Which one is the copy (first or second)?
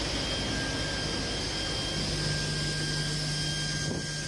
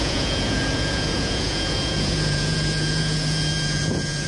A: second